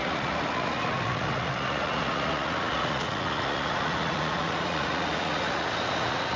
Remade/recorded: remade